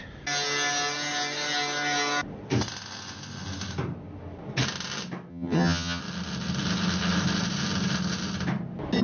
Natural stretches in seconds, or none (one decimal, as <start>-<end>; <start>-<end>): 0.0-5.3; 6.0-9.0